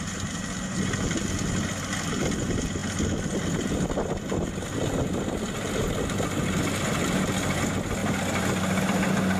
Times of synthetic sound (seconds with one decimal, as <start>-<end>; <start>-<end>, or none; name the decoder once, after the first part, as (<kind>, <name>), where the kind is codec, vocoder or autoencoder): none